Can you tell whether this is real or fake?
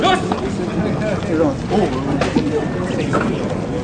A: real